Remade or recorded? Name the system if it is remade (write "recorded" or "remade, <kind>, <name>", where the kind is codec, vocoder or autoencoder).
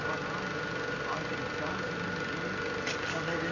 recorded